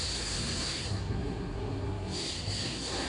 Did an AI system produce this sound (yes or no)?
yes